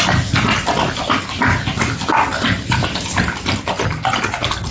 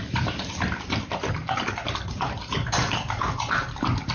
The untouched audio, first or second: first